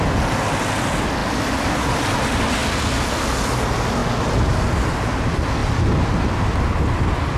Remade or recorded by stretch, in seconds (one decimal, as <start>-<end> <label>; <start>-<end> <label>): 0.0-7.4 recorded